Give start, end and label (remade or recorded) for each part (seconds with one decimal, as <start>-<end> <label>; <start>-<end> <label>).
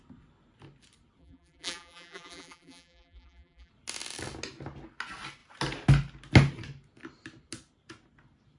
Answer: 0.0-1.2 recorded; 1.2-3.7 remade; 3.7-8.6 recorded